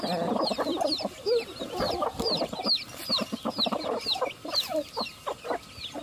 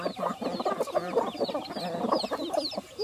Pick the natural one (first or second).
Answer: second